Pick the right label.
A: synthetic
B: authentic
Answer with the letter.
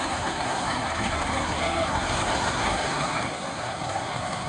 A